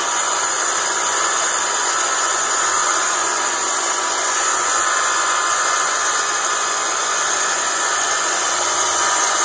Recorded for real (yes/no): no